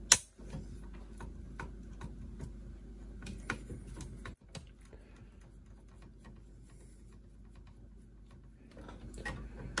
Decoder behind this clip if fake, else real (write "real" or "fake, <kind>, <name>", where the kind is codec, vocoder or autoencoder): real